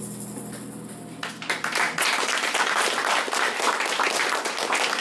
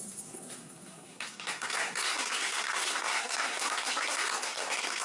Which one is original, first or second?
first